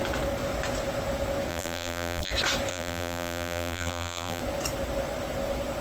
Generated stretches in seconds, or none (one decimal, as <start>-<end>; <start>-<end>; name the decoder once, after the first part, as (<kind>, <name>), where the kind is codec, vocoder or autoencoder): 1.5-2.3 (vocoder, BigVGAN v2); 2.7-4.4